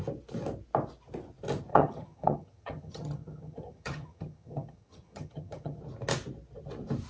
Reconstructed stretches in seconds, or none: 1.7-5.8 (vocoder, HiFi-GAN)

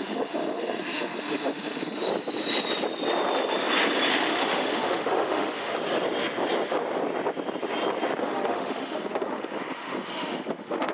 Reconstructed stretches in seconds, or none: 0.0-2.1 (autoencoder, DAC-VAE); 4.1-5.7; 8.2-10.9

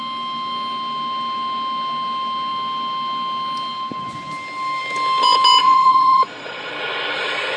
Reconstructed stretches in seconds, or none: 5.6-6.7 (vocoder, Vocos)